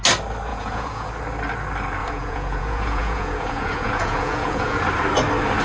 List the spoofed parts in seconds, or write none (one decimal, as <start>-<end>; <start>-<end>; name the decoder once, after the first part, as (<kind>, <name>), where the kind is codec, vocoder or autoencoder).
0.5-1.1 (vocoder, Vocos); 2.0-4.8